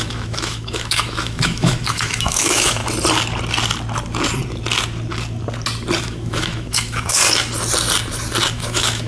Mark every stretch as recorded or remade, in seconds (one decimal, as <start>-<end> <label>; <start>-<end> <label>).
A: 0.0-2.8 remade; 2.8-6.0 recorded; 6.0-7.2 remade; 7.2-8.5 recorded; 8.5-9.1 remade